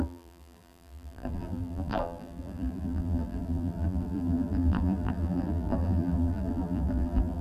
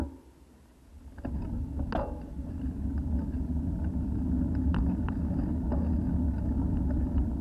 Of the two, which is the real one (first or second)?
second